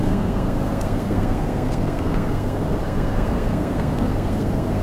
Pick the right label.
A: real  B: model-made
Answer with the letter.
B